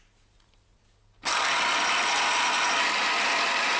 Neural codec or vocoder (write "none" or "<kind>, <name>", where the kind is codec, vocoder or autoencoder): none